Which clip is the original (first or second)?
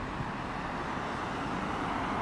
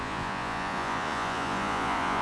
first